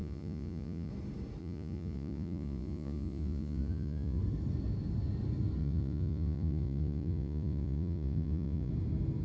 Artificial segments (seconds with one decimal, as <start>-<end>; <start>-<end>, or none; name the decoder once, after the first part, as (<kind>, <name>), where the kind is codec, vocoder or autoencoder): 0.0-0.9 (vocoder, Vocos); 1.4-4.2; 5.6-8.7